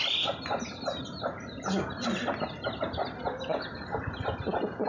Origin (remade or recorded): recorded